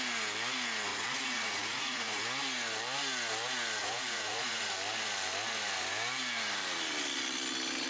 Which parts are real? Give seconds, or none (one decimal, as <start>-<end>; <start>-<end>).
0.0-0.9; 2.2-3.8; 4.7-7.9